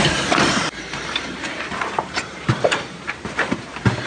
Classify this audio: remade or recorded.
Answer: remade